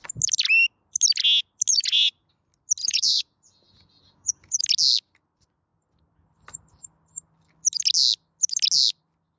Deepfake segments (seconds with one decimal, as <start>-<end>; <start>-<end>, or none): 1.7-2.3; 2.8-4.6